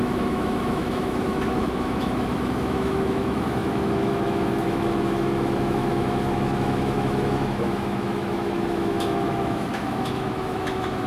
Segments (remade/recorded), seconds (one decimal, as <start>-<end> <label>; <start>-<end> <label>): 0.0-11.1 remade